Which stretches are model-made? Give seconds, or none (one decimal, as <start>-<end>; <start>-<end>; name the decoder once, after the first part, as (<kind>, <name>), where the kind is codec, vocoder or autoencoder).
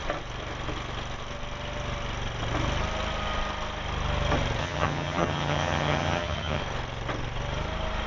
4.6-6.6 (vocoder, HiFi-GAN)